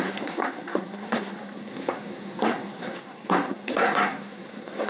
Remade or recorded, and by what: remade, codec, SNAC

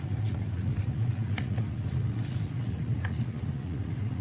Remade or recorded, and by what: remade, vocoder, Vocos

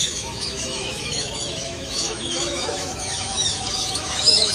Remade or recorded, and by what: remade, autoencoder, DAC-VAE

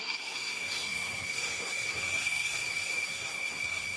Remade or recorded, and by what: remade, codec, SNAC